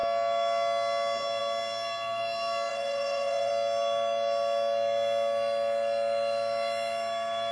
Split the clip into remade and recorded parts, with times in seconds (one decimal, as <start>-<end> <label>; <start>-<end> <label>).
0.0-2.7 recorded; 2.7-3.5 remade; 3.5-7.5 recorded